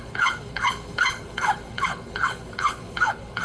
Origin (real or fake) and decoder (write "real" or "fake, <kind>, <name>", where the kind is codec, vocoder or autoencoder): fake, codec, HILCodec